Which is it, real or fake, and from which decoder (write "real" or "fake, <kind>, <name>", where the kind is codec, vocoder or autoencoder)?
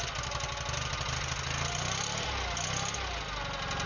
real